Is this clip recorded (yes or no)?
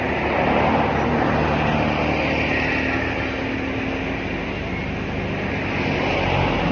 yes